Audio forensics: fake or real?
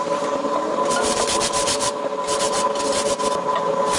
real